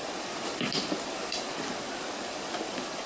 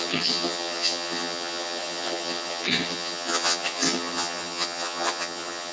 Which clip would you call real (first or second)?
first